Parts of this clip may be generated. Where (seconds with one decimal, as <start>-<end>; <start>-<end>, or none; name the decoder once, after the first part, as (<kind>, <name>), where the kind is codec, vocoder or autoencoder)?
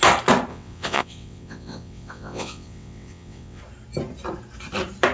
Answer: 0.5-3.6 (vocoder, WaveNeXt)